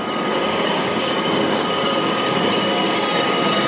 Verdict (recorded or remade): remade